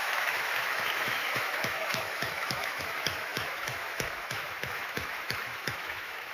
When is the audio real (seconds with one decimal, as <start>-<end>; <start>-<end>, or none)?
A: none